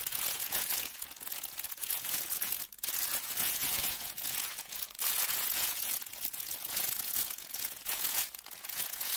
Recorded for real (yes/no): no